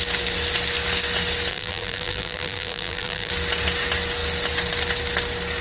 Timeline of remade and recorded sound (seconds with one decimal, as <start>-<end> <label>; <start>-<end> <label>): 0.0-1.5 recorded; 1.5-3.3 remade; 3.3-5.6 recorded